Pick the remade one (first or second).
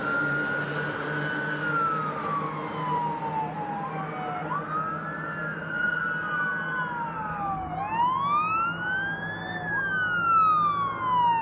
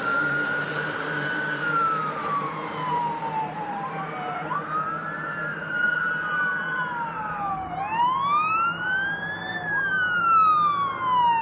second